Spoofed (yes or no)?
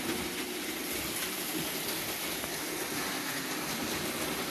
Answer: no